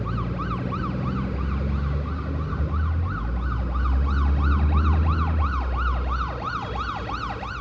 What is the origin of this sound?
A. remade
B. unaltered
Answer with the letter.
B